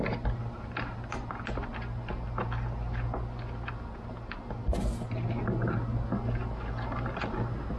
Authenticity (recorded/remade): recorded